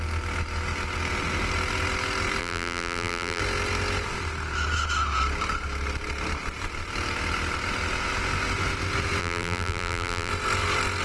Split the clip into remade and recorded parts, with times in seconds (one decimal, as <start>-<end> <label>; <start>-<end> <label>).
0.0-2.4 recorded; 2.4-3.4 remade; 3.4-9.2 recorded; 9.2-10.3 remade; 10.3-11.0 recorded

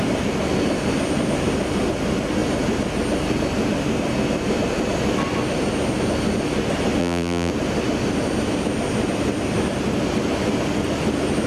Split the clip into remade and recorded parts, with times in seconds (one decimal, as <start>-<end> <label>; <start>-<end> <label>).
0.0-7.0 recorded; 7.0-7.5 remade; 7.5-11.5 recorded

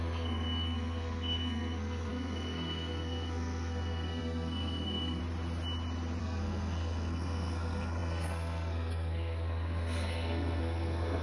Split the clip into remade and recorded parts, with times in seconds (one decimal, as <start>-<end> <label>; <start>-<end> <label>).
0.0-5.2 remade; 5.2-6.2 recorded; 6.2-11.2 remade

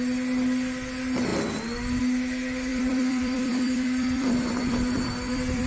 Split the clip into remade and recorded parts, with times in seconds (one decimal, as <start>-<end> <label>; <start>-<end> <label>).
0.0-2.7 recorded; 2.7-5.7 remade

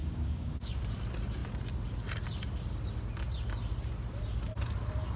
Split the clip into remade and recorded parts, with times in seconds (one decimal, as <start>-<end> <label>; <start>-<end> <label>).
0.0-0.8 remade; 0.8-5.2 recorded

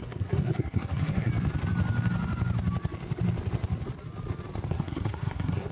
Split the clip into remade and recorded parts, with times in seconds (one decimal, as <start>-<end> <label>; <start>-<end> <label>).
0.0-1.3 remade; 1.3-4.7 recorded; 4.7-5.7 remade